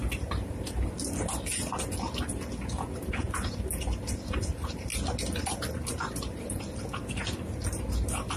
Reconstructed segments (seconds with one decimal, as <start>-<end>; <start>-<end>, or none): none